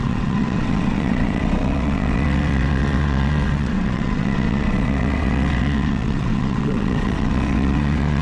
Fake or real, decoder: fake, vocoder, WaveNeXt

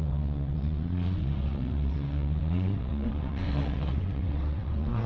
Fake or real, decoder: fake, vocoder, WaveNeXt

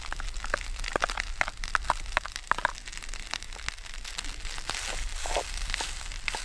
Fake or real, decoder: real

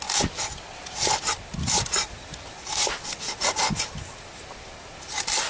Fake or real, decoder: real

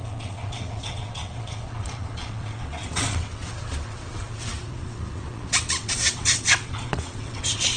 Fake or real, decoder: fake, vocoder, WaveNeXt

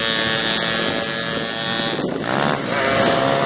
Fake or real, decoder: real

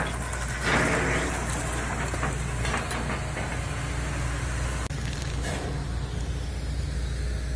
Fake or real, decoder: real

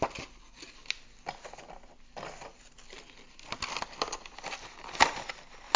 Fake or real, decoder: real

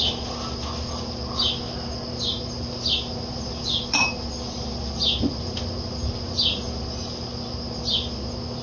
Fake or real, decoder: real